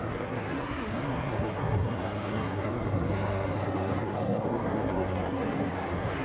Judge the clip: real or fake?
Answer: fake